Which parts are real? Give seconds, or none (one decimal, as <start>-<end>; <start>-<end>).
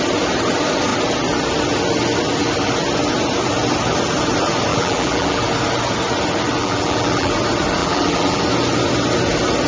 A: 0.0-4.7; 5.4-6.6; 7.3-7.8; 8.4-9.7